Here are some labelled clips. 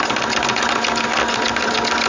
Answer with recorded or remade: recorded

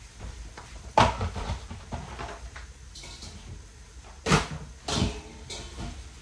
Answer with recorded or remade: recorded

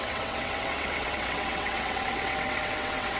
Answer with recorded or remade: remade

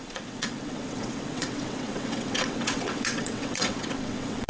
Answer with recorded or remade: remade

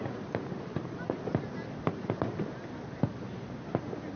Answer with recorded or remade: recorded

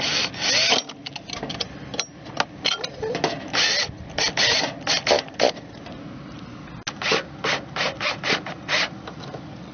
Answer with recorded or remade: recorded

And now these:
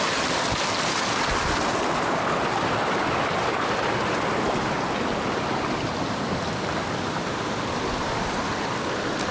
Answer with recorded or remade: recorded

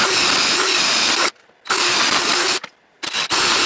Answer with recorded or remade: recorded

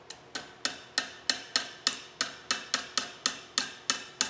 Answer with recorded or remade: recorded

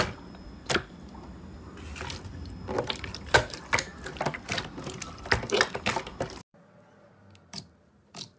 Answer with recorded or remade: recorded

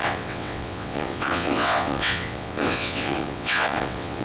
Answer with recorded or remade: remade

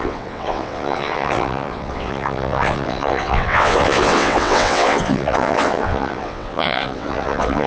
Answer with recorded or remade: remade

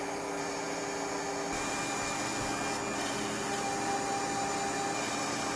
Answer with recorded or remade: recorded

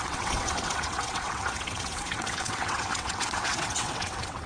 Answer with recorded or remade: remade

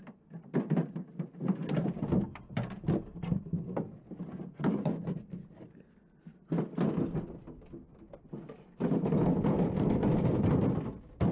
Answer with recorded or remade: recorded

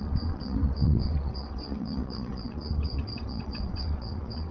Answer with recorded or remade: remade